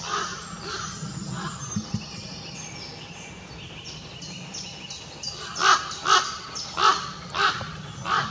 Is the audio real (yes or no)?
yes